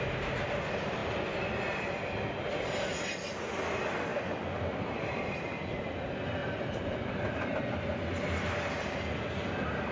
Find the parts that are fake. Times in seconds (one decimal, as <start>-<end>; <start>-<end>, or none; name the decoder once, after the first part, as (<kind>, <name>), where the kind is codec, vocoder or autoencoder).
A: 4.1-5.5 (vocoder, BigVGAN v2); 6.4-7.5